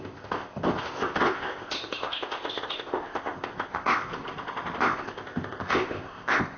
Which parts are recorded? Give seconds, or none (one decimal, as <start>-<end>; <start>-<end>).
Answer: 4.1-4.8